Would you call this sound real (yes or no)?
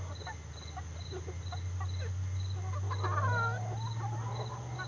yes